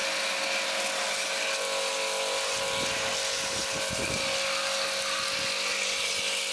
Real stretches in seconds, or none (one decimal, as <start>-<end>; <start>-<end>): 0.0-6.5